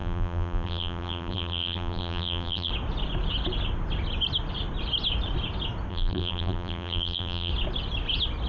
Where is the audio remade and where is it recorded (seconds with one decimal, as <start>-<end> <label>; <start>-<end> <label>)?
0.0-2.7 remade; 2.7-5.9 recorded; 5.9-7.5 remade; 7.5-8.5 recorded